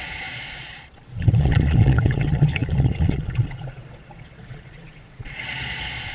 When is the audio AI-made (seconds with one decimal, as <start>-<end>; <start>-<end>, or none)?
0.0-6.1